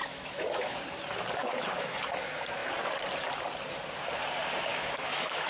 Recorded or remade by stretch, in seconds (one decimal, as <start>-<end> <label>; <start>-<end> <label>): 0.0-0.8 remade; 0.8-1.4 recorded; 1.4-2.0 remade; 2.0-4.7 recorded; 4.7-5.5 remade